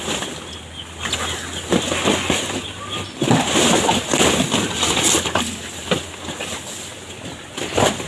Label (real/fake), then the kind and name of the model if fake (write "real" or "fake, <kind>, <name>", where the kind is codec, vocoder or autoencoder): real